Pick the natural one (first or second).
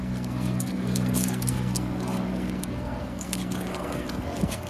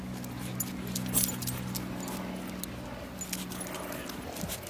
second